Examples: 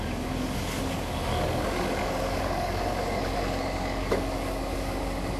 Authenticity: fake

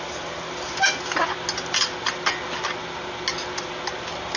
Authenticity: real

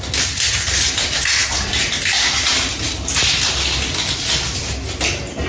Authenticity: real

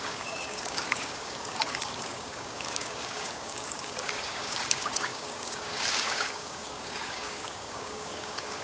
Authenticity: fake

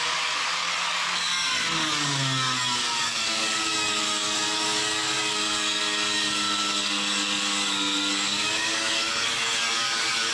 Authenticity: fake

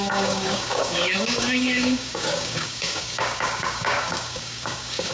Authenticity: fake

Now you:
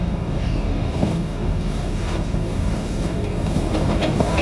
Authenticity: fake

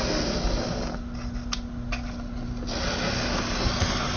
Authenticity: real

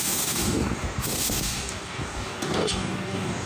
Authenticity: fake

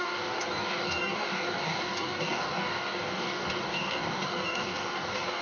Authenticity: fake